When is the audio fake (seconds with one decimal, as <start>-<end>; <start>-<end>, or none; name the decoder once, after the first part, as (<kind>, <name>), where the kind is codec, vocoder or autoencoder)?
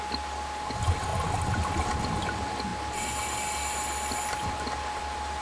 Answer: none